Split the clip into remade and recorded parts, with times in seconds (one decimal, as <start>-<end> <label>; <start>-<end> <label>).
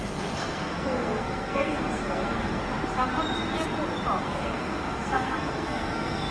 0.0-2.6 remade; 2.6-4.2 recorded; 4.2-6.3 remade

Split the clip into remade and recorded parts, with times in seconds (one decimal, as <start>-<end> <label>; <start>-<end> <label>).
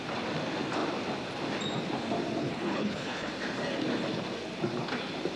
0.0-2.4 recorded; 2.4-3.3 remade; 3.3-5.4 recorded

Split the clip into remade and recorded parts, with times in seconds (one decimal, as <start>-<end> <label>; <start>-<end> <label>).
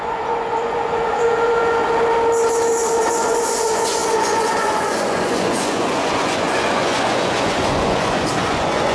0.0-1.8 remade; 1.8-3.0 recorded; 3.0-8.9 remade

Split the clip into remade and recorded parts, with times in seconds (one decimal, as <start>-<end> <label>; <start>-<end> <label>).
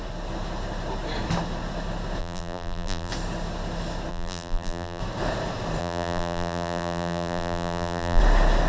0.0-2.2 recorded; 2.2-3.1 remade; 3.1-4.1 recorded; 4.1-5.0 remade; 5.0-5.8 recorded; 5.8-8.2 remade; 8.2-8.7 recorded